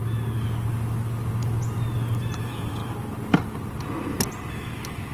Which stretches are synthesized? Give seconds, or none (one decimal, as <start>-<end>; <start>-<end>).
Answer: 2.4-2.8; 4.5-5.1